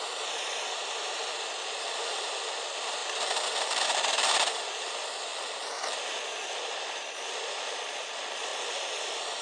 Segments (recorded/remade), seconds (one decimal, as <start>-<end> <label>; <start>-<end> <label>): 0.0-5.3 remade; 5.3-6.5 recorded; 6.5-8.5 remade; 8.5-9.0 recorded; 9.0-9.4 remade